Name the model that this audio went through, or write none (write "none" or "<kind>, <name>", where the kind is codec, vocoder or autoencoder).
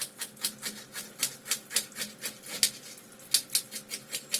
none